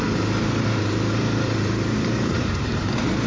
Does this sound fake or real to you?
fake